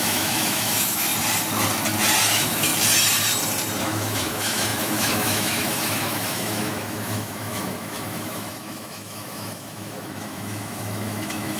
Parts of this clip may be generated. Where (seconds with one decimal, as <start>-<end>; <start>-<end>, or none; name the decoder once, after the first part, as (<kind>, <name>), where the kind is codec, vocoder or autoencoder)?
0.0-1.1 (autoencoder, DAC-VAE); 2.3-2.7; 3.8-11.6